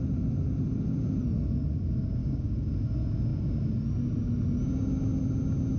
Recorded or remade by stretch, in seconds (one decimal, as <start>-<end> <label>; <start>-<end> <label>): 0.0-2.2 recorded; 2.2-2.7 remade; 2.7-5.8 recorded